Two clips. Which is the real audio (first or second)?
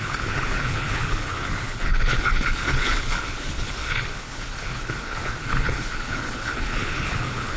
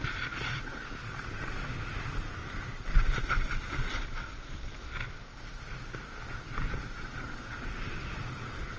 second